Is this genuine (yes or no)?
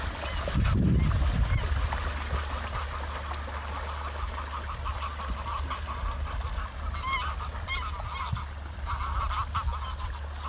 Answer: yes